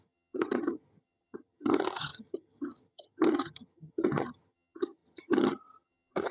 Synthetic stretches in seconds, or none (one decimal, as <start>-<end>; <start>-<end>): 0.0-6.3